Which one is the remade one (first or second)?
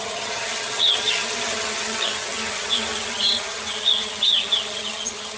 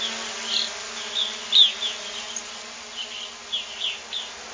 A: first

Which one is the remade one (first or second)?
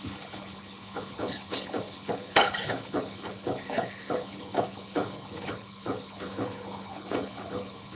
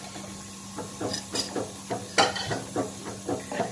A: first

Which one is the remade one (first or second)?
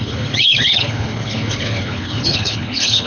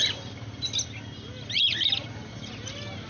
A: first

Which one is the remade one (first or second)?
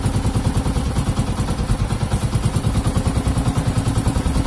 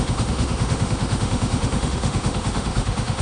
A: second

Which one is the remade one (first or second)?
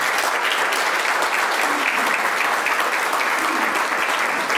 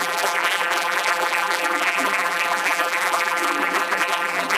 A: second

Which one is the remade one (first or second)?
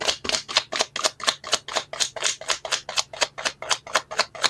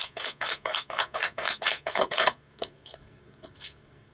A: second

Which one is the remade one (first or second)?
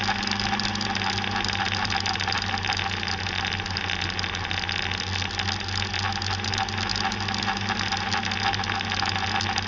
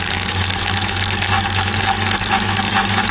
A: second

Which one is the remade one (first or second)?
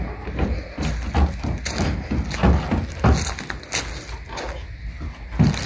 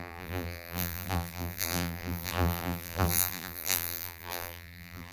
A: second